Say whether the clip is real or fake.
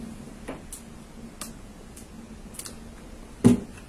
real